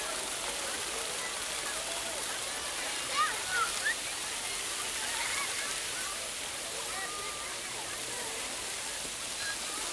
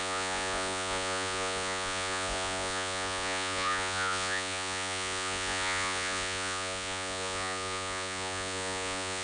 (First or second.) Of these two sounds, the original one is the first